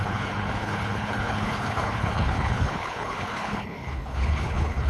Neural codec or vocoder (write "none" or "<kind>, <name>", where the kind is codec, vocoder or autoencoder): codec, HILCodec